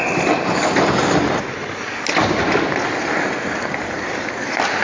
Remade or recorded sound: recorded